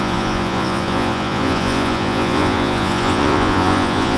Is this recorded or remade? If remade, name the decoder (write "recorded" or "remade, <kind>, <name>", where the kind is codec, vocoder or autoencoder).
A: remade, vocoder, Vocos